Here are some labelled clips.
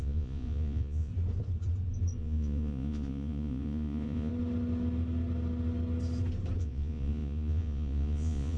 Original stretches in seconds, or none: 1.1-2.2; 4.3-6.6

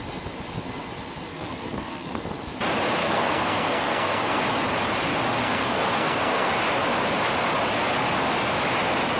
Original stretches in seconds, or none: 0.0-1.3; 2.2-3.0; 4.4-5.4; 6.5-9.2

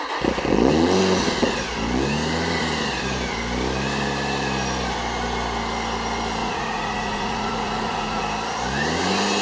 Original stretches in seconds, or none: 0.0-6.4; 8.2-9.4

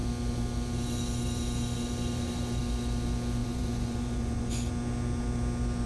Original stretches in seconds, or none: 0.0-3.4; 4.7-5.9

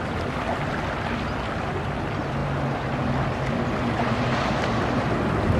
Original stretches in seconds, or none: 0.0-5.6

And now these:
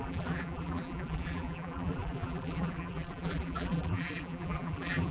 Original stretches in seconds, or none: none